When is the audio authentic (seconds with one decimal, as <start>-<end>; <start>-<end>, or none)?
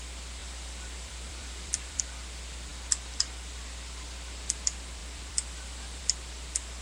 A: 0.0-0.4; 2.0-5.0; 6.0-6.8